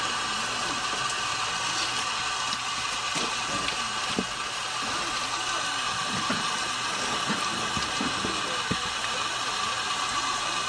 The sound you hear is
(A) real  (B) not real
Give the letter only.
A